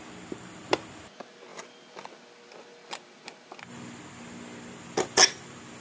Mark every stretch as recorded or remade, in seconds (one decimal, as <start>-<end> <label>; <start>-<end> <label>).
0.0-5.8 recorded